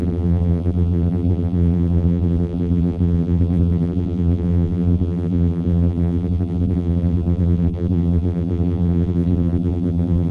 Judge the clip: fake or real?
fake